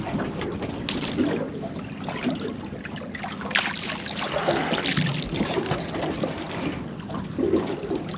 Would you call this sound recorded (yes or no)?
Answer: yes